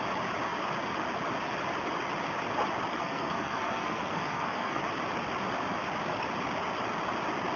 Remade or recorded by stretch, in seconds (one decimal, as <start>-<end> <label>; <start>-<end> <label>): 0.0-2.9 recorded; 2.9-4.8 remade; 4.8-7.6 recorded